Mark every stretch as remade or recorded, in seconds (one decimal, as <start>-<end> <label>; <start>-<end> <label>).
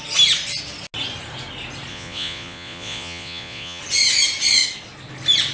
0.0-1.9 recorded; 1.9-3.8 remade; 3.8-5.5 recorded